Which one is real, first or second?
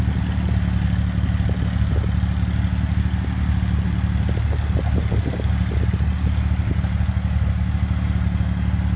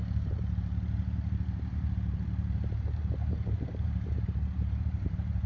first